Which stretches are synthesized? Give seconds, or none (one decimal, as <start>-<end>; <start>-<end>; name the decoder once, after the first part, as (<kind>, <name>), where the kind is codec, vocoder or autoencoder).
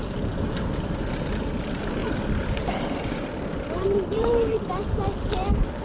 2.0-4.7 (vocoder, BigVGAN v2)